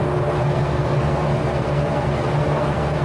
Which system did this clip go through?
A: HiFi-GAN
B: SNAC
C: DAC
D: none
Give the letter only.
B